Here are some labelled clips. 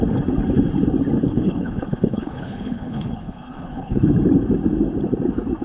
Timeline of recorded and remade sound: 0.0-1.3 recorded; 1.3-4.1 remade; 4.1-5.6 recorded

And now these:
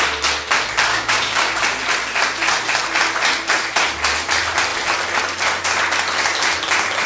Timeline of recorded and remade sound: 0.0-0.9 recorded; 0.9-1.6 remade; 1.6-7.1 recorded

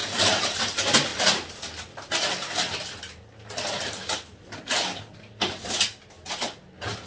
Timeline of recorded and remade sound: 0.0-0.6 remade; 0.6-7.1 recorded

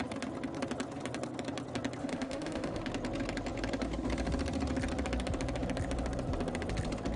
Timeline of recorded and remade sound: 0.0-2.0 recorded; 2.0-2.8 remade; 2.8-7.2 recorded

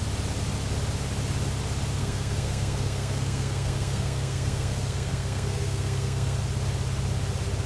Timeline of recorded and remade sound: 0.0-2.0 recorded; 2.0-6.4 remade; 6.4-7.7 recorded

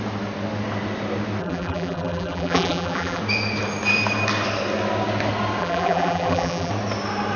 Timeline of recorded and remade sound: 0.0-1.4 recorded; 1.4-3.2 remade; 3.2-5.6 recorded; 5.6-6.7 remade; 6.7-7.4 recorded